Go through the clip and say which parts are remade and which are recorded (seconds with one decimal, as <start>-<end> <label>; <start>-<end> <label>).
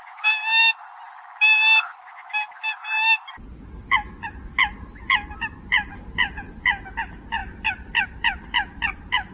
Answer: 0.0-9.3 recorded